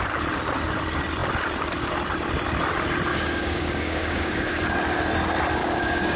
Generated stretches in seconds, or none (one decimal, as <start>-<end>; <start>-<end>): 3.1-4.6; 5.6-6.2